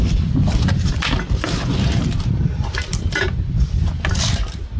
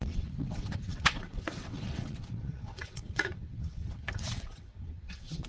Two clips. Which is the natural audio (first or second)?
first